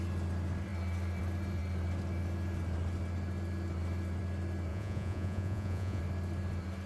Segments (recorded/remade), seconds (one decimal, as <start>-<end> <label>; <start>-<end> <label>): 0.0-4.7 recorded; 4.7-6.0 remade; 6.0-6.9 recorded